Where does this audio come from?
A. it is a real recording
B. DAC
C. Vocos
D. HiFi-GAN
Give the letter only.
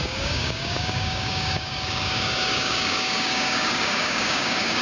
B